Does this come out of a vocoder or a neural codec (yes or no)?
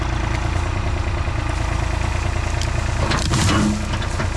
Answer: no